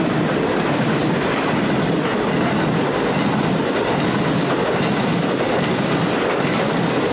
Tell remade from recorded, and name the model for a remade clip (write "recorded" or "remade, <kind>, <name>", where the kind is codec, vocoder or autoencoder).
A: recorded